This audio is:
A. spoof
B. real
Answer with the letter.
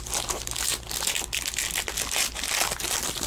B